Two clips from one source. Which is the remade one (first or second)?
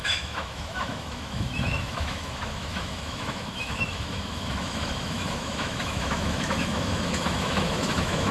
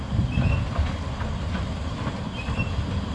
first